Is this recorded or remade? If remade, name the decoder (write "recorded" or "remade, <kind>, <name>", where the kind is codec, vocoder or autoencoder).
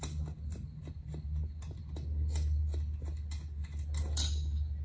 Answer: recorded